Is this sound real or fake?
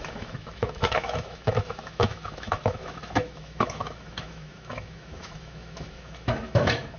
fake